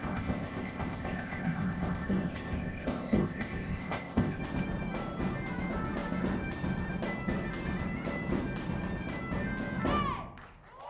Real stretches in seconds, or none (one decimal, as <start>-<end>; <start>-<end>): 4.4-10.9